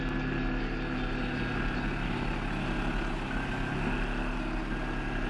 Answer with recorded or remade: recorded